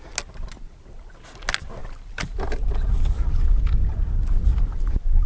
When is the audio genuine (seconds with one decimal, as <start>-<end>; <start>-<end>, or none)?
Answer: 0.0-5.3